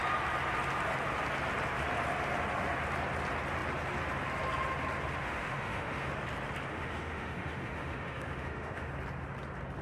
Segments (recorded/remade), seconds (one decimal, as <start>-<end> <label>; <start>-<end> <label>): 0.0-5.2 recorded; 5.2-6.1 remade; 6.1-6.7 recorded; 6.7-8.9 remade; 8.9-9.8 recorded